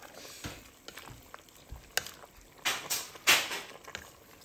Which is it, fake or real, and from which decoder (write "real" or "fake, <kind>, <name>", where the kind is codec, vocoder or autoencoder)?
real